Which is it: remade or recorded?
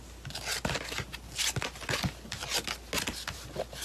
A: recorded